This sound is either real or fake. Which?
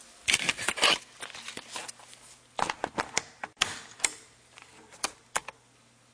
real